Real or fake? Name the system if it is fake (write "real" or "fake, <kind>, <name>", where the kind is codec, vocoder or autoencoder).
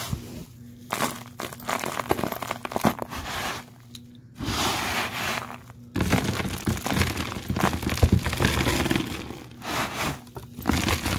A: real